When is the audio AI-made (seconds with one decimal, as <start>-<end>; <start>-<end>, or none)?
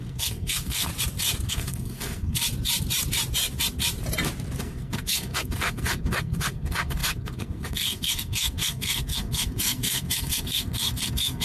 0.0-0.9; 1.5-2.4; 4.6-11.4